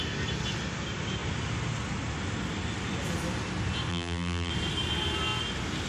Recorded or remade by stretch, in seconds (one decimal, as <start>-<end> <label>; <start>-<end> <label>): 0.0-3.9 recorded; 3.9-4.5 remade; 4.5-5.9 recorded